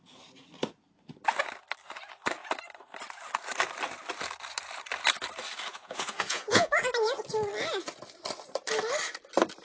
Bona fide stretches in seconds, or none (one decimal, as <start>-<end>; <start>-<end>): 0.0-5.7; 6.7-9.6